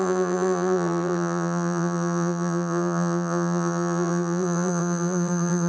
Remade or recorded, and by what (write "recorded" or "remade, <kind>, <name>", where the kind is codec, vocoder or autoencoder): remade, vocoder, BigVGAN v2